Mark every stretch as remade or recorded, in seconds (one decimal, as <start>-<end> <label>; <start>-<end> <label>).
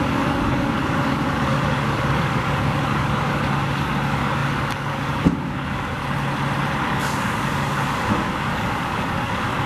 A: 0.0-6.0 remade; 6.0-6.8 recorded; 6.8-9.7 remade